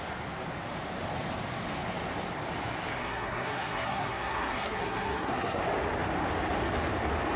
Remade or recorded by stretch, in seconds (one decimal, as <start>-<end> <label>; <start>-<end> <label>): 0.0-3.0 recorded; 3.0-5.6 remade; 5.6-7.4 recorded